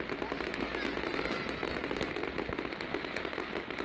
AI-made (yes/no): no